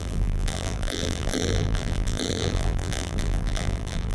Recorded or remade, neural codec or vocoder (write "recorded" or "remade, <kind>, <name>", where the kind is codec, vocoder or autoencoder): remade, vocoder, BigVGAN v2